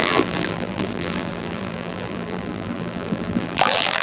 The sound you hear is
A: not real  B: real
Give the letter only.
A